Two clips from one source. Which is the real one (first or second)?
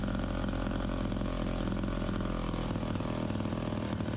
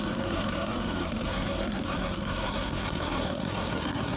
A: first